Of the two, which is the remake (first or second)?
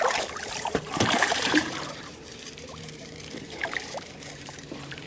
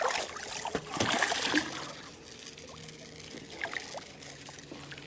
first